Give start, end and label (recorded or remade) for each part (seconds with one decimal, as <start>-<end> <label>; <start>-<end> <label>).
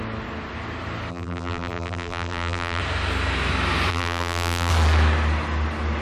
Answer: 0.0-1.1 recorded; 1.1-2.8 remade; 2.8-3.9 recorded; 3.9-4.7 remade; 4.7-6.0 recorded